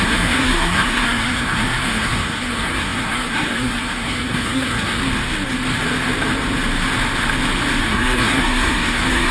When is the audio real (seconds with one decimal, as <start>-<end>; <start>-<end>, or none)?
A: 5.0-7.8